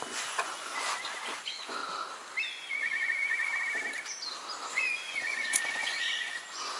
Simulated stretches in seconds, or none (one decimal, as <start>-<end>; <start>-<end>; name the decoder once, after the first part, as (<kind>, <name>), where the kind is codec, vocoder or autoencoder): 0.0-1.8 (vocoder, Vocos); 2.5-3.5; 4.7-6.8